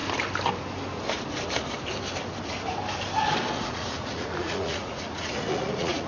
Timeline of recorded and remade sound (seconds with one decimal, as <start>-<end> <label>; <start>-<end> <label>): 0.0-3.6 recorded; 3.6-6.1 remade